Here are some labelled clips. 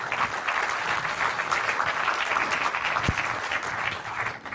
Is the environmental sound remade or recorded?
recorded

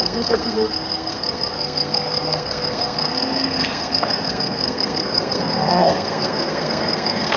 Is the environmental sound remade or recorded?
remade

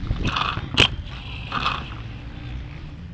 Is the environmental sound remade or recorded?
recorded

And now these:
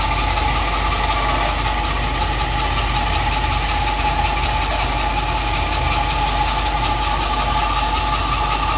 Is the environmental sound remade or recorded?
recorded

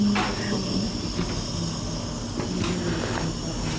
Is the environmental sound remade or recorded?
recorded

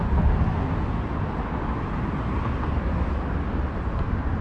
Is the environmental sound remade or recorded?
recorded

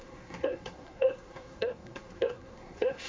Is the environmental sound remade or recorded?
remade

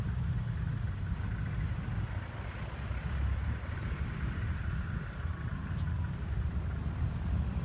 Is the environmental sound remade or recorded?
recorded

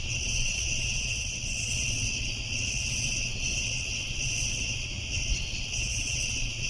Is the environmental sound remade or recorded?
remade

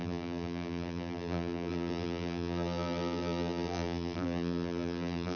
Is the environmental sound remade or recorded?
remade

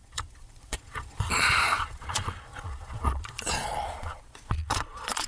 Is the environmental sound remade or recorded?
remade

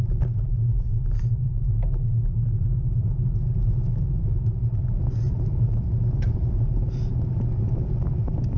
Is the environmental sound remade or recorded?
remade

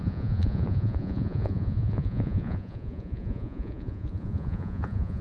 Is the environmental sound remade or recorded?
remade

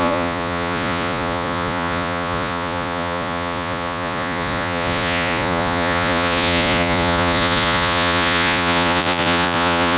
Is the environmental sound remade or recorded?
remade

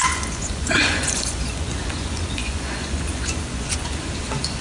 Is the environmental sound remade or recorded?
remade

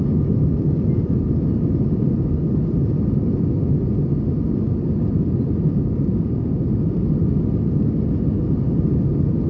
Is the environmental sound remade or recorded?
recorded